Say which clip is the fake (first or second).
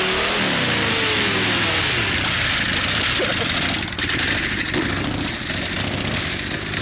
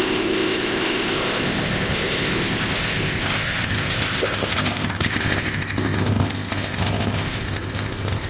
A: second